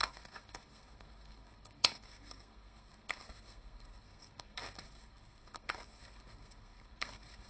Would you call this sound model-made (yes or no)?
yes